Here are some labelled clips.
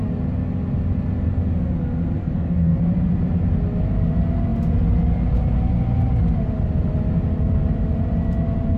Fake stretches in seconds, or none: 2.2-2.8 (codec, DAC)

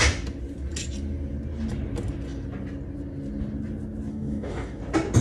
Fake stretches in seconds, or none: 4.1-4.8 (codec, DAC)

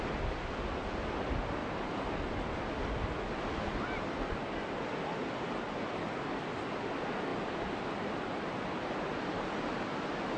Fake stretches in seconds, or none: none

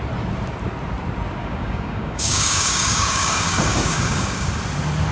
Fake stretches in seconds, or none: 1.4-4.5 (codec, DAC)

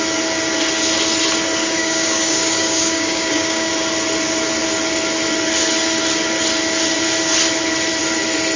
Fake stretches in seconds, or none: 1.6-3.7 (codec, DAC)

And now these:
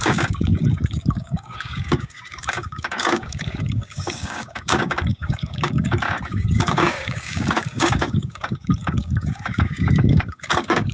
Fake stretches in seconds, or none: 0.0-10.9 (codec, DAC)

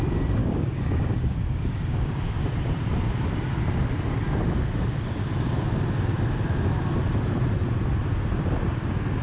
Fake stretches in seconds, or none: 0.4-2.4 (codec, DAC)